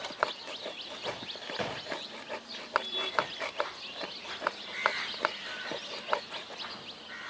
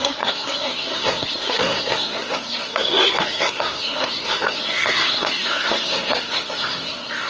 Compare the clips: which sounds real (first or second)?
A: first